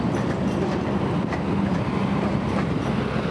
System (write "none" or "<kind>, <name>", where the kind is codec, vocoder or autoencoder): none